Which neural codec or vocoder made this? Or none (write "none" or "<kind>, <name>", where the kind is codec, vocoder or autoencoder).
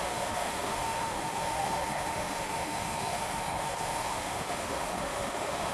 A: autoencoder, DAC-VAE